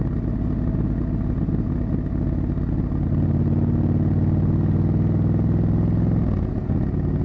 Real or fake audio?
real